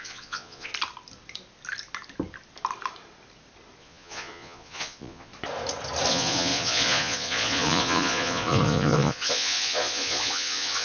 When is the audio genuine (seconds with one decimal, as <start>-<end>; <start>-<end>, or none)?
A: 0.7-3.8; 5.3-6.1